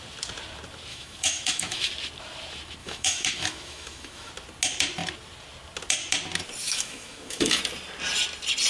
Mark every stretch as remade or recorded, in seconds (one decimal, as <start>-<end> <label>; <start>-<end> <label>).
0.0-0.9 recorded; 0.9-1.9 remade; 1.9-2.8 recorded; 2.8-4.3 remade; 4.3-6.6 recorded; 6.6-7.6 remade; 7.6-8.7 recorded